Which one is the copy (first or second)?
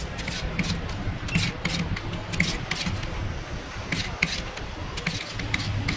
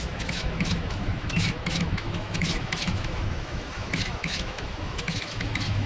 second